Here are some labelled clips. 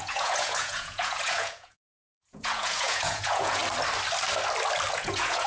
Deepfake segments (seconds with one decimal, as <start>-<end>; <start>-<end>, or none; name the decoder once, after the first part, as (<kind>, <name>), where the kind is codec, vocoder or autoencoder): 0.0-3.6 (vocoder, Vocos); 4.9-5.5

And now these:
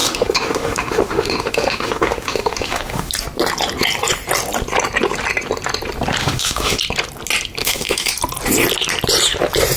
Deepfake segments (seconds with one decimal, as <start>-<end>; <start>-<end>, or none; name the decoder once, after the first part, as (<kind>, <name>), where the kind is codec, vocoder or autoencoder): 0.0-3.1 (autoencoder, DAC-VAE); 6.2-6.8; 7.6-8.1

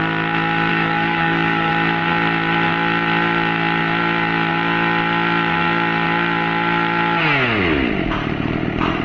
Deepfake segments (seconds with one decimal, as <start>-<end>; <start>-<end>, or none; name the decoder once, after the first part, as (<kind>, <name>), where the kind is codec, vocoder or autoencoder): 0.7-1.7 (codec, DAC)

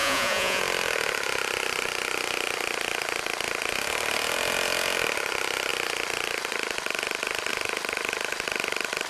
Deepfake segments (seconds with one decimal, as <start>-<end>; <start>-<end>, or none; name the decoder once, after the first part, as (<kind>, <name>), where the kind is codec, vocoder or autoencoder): 0.0-0.6 (vocoder, Vocos)

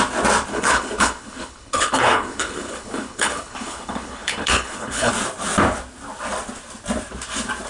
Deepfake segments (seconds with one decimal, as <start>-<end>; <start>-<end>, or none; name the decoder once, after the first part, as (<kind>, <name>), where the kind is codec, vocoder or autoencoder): 0.5-5.1 (codec, HILCodec)

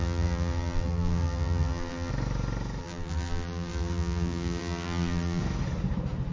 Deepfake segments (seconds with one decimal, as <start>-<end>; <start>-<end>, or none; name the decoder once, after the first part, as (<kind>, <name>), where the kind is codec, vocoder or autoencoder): 0.0-2.1 (vocoder, BigVGAN v2); 2.8-5.4